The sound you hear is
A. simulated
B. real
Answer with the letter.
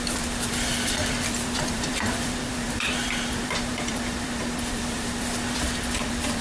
A